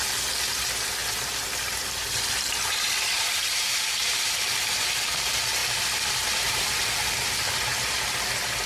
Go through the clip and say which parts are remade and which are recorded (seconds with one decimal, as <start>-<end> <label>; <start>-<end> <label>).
0.0-0.6 remade; 0.6-1.0 recorded; 1.0-4.5 remade; 4.5-5.6 recorded; 5.6-8.1 remade; 8.1-8.7 recorded